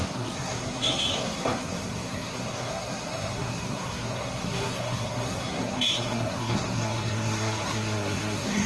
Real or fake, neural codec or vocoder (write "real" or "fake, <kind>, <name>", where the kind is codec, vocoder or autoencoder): fake, codec, SNAC